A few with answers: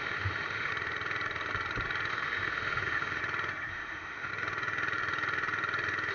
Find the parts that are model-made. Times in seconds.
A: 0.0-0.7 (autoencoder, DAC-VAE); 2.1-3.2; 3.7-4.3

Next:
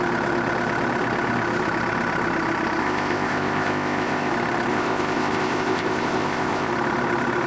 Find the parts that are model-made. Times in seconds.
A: 2.8-4.3 (codec, ZipCodec); 4.7-6.7

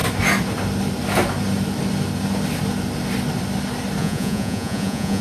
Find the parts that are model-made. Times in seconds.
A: 4.0-5.2 (vocoder, Vocos)

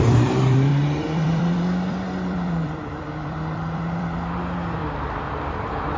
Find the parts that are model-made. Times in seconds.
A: 0.0-4.8 (vocoder, BigVGAN v2); 5.5-6.0

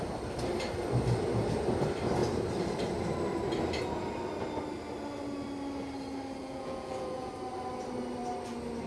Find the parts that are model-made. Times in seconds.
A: 6.4-7.3 (vocoder, Vocos)